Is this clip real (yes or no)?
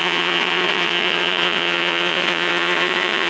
no